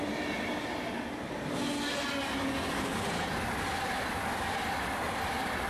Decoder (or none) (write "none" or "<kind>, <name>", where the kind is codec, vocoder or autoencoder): none